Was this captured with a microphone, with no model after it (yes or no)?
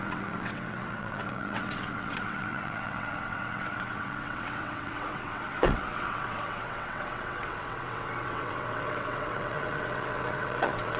no